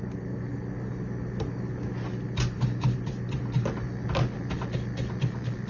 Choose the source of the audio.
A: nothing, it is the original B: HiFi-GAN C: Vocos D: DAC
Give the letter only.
A